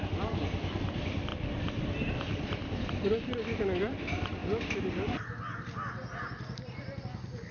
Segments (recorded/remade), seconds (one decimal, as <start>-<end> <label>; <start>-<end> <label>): 0.0-7.5 recorded